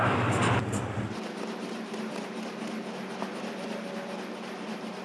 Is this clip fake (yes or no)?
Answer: no